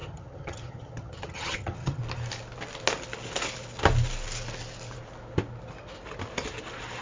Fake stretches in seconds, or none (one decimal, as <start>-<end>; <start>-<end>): 0.0-2.0